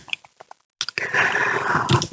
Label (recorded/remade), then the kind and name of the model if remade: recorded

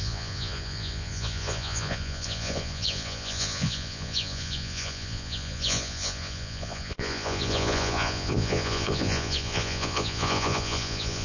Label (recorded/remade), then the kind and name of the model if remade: remade, vocoder, Vocos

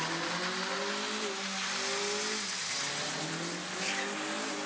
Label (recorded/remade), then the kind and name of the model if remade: recorded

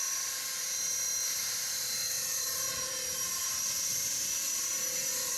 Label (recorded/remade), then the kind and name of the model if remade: remade, vocoder, BigVGAN v2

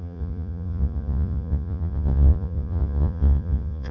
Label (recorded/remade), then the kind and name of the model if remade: remade, vocoder, Vocos